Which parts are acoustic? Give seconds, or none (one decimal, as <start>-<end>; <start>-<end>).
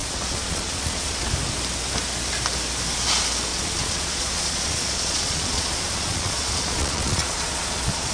1.3-3.5